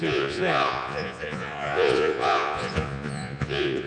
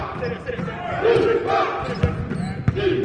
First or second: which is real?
second